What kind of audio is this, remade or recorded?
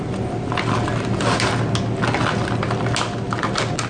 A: recorded